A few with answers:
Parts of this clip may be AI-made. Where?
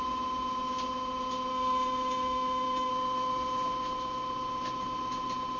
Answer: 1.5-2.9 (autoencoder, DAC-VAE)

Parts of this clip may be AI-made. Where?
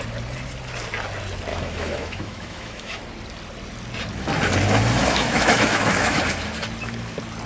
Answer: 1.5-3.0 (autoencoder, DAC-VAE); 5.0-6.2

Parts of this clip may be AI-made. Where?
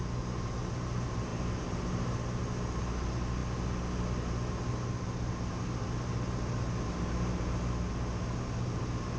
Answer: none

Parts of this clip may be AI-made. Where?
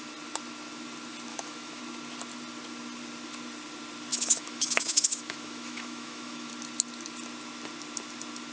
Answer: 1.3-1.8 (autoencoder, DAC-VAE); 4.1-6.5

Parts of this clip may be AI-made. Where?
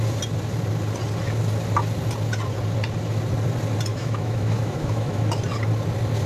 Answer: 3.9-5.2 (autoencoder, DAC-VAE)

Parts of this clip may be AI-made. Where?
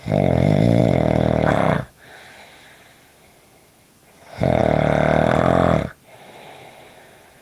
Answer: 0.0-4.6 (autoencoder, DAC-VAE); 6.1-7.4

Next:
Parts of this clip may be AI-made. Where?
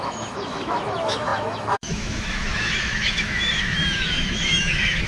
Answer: 0.0-5.1 (autoencoder, DAC-VAE)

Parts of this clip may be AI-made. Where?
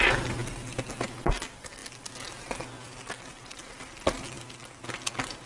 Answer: none